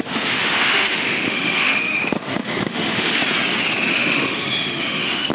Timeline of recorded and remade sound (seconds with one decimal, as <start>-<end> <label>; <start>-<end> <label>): 0.0-3.2 remade; 3.2-3.9 recorded; 3.9-5.3 remade

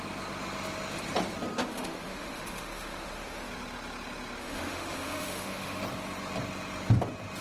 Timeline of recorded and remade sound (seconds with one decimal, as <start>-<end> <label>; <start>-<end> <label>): 0.0-1.7 recorded; 1.7-3.5 remade; 3.5-4.4 recorded; 4.4-5.8 remade; 5.8-7.4 recorded

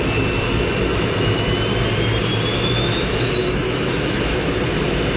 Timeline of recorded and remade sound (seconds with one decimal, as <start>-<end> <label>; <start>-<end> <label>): 0.0-2.5 recorded; 2.5-4.6 remade; 4.6-5.2 recorded